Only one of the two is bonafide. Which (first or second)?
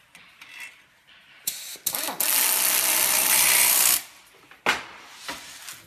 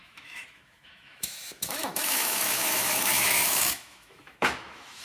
first